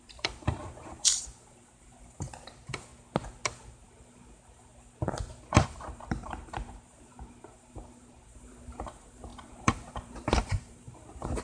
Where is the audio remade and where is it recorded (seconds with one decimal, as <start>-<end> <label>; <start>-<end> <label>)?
0.0-2.9 remade; 2.9-3.8 recorded; 3.8-4.7 remade; 4.7-5.4 recorded; 5.4-11.4 remade